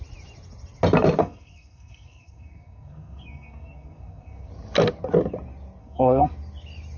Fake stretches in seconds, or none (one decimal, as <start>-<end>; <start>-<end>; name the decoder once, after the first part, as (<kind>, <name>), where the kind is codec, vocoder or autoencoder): 1.2-4.5 (codec, SNAC); 5.8-6.3